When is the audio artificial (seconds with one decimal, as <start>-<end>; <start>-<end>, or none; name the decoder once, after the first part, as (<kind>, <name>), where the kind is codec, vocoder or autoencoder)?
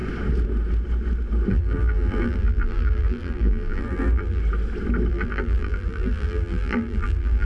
1.5-4.4 (vocoder, BigVGAN v2); 5.1-7.5